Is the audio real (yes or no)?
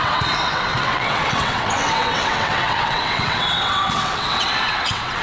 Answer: no